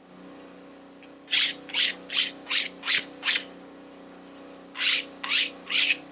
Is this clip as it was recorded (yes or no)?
yes